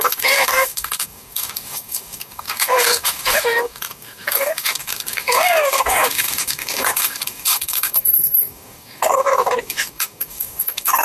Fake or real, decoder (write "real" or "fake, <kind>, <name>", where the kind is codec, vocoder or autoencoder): fake, codec, DAC